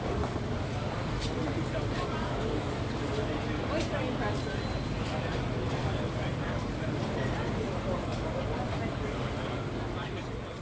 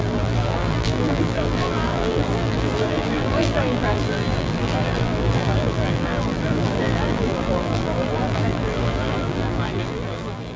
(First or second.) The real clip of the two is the first